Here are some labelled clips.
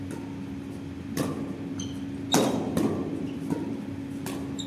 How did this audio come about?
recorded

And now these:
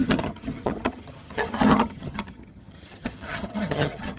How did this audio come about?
remade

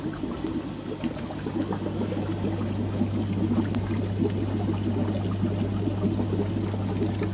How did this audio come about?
recorded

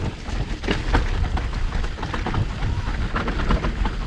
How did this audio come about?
recorded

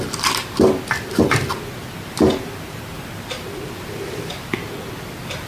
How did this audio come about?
recorded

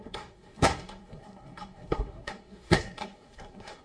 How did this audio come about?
remade